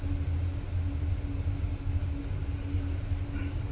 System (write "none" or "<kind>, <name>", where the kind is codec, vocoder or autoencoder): none